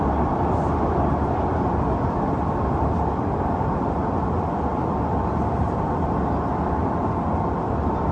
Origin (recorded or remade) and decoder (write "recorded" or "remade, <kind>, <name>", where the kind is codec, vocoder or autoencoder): recorded